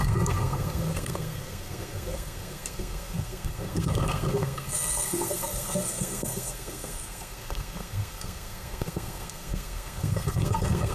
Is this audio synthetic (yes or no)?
yes